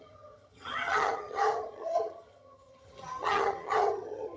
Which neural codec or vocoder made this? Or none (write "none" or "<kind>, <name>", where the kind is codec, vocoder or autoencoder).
vocoder, HiFi-GAN